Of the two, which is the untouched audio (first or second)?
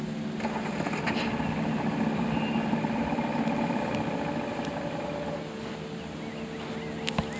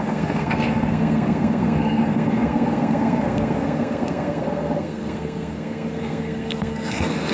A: first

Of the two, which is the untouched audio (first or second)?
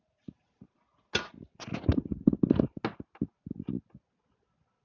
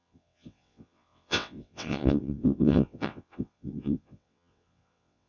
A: first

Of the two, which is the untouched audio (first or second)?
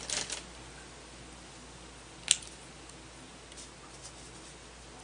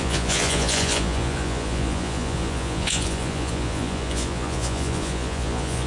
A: first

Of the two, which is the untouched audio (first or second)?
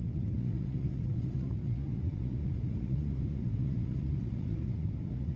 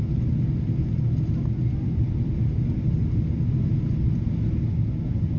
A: second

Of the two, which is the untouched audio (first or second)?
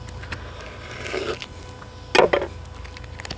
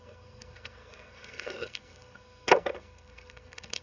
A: first